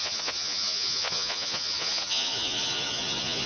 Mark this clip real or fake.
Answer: fake